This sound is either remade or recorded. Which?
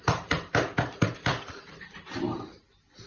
remade